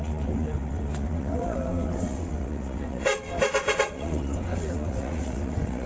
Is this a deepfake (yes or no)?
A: yes